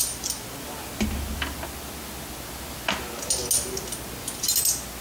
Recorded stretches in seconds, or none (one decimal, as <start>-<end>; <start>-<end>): 0.0-5.0